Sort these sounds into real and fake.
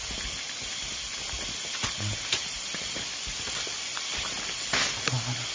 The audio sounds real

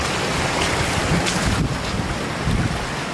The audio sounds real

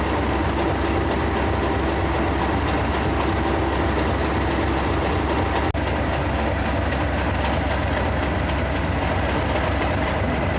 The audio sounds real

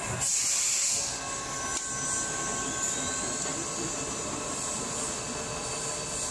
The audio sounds real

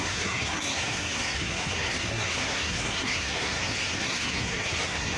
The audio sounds fake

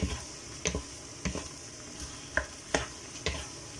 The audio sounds real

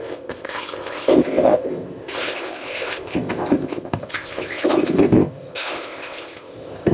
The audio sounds fake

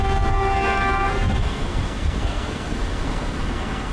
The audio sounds fake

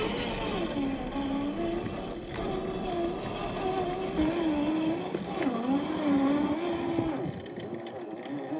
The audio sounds real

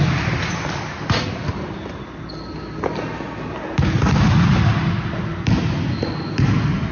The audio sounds real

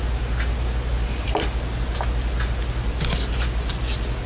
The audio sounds real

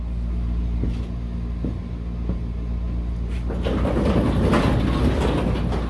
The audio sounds real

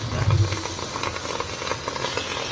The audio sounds real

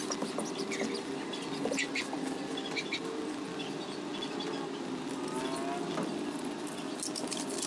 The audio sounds real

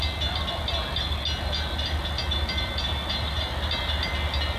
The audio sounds real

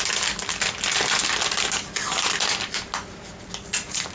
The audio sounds real